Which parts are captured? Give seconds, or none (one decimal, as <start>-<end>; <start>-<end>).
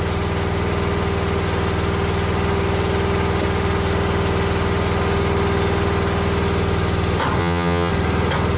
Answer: 0.0-7.4; 7.9-8.6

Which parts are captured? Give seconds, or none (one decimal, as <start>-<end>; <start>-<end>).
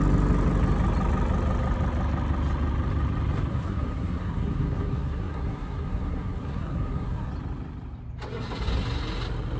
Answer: 0.0-3.5; 7.3-9.6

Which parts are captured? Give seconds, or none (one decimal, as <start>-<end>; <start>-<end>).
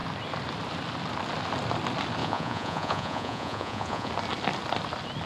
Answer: 0.0-2.2; 4.1-5.3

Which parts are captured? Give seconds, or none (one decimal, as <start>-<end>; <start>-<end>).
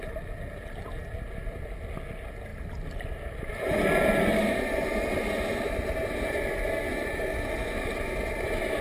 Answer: 0.0-2.5; 3.5-8.8